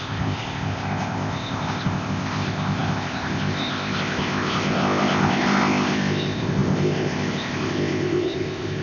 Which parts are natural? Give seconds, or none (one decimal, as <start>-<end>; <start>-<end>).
none